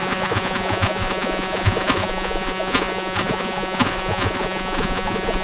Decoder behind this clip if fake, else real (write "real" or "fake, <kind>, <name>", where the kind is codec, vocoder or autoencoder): fake, vocoder, Vocos